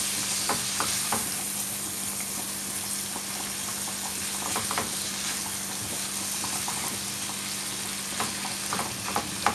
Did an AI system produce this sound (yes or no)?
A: no